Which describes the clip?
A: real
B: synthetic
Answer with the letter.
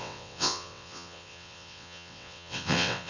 B